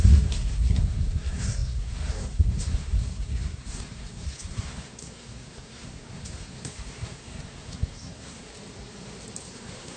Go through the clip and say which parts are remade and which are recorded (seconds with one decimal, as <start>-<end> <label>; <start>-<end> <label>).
0.0-8.5 remade; 8.5-9.4 recorded; 9.4-10.0 remade